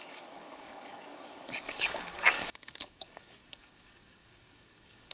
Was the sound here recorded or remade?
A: remade